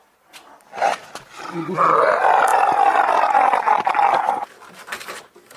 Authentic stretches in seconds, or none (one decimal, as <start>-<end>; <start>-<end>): 0.0-5.6